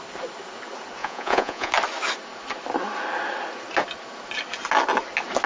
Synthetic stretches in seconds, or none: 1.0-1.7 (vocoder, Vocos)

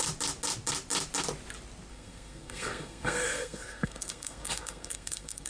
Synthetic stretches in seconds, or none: 1.9-5.5 (codec, SNAC)

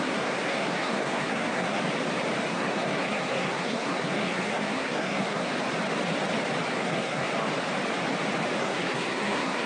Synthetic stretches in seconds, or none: 0.0-1.8 (codec, SNAC); 2.5-5.5; 6.7-7.3; 8.6-9.7

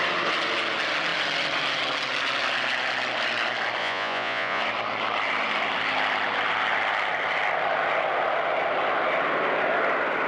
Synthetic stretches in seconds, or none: 3.8-4.6 (vocoder, Vocos)

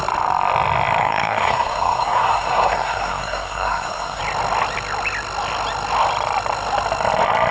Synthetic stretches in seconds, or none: 1.0-4.2 (codec, SNAC)